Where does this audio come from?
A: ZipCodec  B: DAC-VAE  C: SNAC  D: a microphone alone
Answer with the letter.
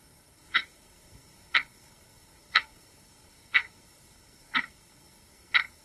C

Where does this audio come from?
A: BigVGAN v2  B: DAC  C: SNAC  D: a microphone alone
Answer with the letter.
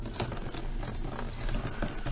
D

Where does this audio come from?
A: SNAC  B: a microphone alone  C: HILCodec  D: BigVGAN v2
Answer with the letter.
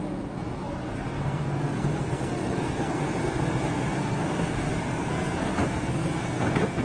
A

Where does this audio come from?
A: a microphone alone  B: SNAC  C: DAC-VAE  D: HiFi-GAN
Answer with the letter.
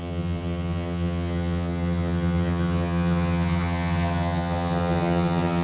D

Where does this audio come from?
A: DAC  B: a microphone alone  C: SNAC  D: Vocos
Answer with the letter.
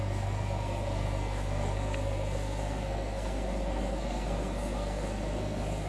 C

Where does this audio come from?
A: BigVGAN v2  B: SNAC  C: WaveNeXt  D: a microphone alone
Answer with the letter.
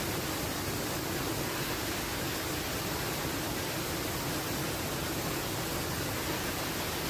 D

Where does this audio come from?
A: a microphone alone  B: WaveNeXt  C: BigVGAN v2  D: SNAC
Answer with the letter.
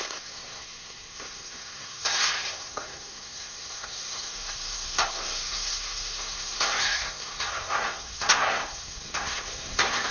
D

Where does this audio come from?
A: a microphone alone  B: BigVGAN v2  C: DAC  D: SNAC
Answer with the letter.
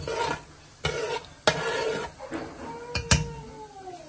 A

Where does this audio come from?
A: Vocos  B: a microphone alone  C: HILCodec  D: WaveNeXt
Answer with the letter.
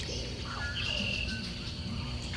B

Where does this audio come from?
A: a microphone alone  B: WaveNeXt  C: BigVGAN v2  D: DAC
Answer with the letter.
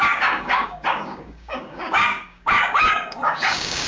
D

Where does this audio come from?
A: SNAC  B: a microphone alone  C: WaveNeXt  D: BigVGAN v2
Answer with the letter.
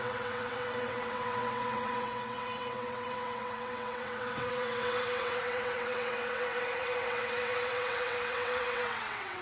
C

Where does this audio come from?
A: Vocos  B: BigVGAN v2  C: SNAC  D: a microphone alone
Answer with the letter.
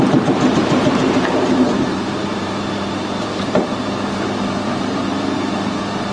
B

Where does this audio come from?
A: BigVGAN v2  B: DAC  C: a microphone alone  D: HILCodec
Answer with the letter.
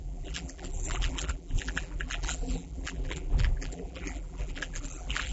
A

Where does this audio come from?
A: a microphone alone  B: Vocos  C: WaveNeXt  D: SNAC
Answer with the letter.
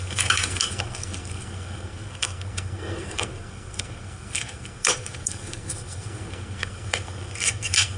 D